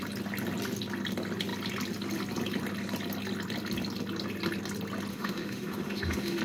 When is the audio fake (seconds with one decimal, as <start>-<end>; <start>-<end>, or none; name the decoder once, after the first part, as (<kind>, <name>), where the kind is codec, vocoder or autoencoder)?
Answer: 5.1-6.4 (autoencoder, DAC-VAE)